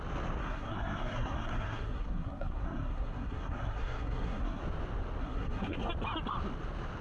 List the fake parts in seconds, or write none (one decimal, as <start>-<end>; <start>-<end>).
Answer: 0.4-4.6; 5.2-5.9